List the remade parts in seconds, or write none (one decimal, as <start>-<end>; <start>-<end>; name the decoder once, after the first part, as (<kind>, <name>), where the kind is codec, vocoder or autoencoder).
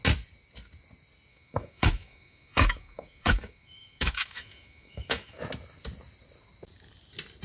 1.3-5.4 (autoencoder, DAC-VAE)